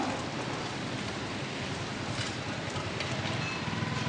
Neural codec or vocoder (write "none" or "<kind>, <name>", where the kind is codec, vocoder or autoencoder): none